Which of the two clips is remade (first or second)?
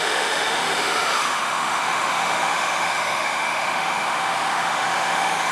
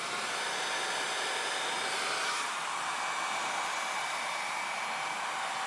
first